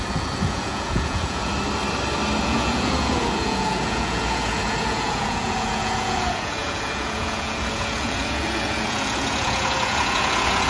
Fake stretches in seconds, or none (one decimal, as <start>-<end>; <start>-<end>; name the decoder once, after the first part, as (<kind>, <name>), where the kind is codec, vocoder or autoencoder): 0.0-1.5 (vocoder, Vocos); 2.4-10.7